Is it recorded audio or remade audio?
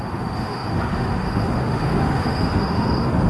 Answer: remade